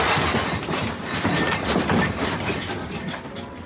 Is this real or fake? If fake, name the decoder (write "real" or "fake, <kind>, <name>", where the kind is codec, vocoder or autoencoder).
real